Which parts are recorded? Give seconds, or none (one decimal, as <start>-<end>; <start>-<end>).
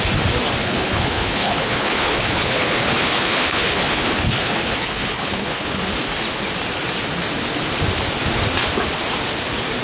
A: 0.0-0.6; 5.8-9.8